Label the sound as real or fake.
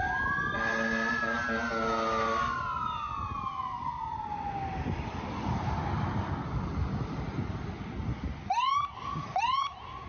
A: real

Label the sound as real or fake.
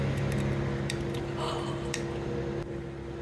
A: real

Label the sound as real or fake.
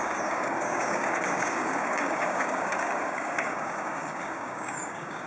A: fake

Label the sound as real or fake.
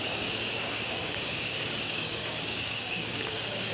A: fake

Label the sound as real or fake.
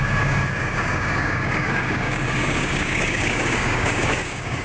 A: fake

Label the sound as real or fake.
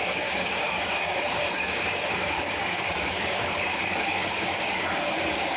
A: fake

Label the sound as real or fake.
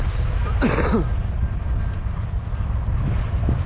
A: real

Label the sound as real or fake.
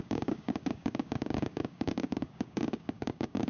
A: fake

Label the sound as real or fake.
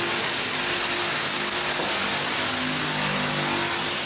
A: real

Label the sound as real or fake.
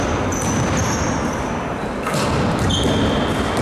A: real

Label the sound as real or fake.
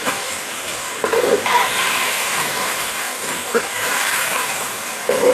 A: fake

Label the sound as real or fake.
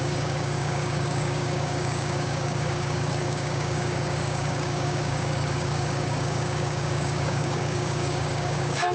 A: fake